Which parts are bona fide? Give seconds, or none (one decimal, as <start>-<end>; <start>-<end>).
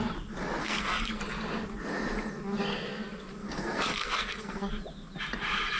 0.0-0.6; 1.2-3.4; 4.7-5.8